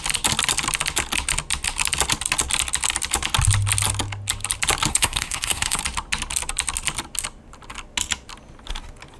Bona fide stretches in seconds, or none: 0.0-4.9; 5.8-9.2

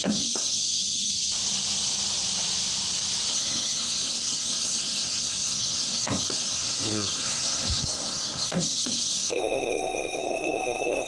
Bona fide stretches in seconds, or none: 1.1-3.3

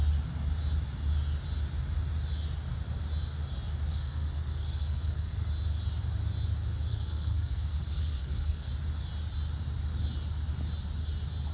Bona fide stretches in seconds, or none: 0.0-3.9; 5.5-6.9; 8.7-11.5

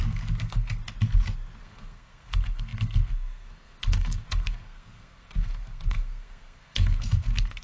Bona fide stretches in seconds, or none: 0.8-1.6